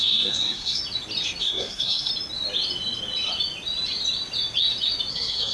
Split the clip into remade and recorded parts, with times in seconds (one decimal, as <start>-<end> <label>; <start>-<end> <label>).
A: 0.0-0.8 remade; 0.8-1.4 recorded; 1.4-2.1 remade; 2.1-5.1 recorded; 5.1-5.5 remade